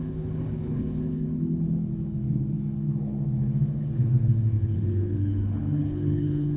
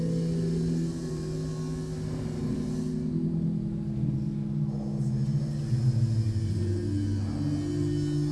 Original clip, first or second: second